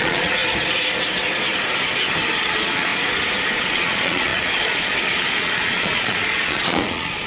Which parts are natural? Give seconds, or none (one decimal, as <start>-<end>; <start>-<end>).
0.4-2.4; 2.9-3.6